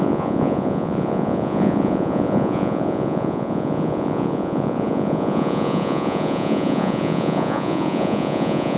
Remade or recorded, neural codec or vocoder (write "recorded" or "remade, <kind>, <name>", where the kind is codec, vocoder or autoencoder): remade, vocoder, Vocos